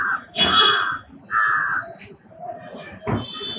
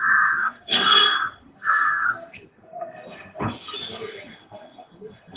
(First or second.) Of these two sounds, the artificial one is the second